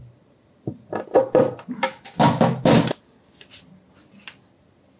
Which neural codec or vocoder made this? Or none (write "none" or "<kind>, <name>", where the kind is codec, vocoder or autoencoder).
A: none